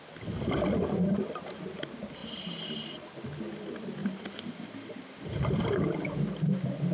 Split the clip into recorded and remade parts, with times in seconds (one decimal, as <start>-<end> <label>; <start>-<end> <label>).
0.0-6.9 recorded